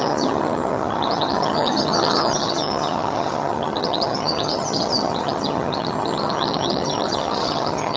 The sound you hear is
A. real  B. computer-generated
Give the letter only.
B